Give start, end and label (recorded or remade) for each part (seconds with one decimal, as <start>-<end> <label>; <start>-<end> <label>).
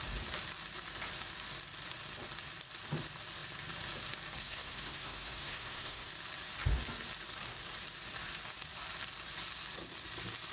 0.0-4.4 recorded; 4.4-6.1 remade; 6.1-10.5 recorded